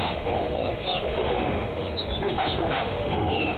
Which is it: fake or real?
fake